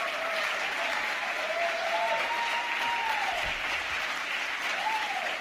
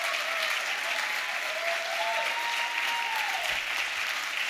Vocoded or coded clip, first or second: first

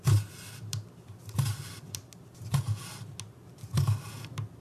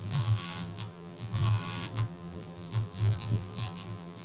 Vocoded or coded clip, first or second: second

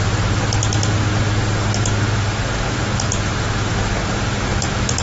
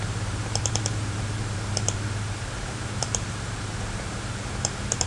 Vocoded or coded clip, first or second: second